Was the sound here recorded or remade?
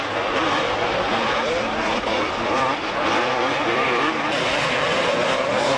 remade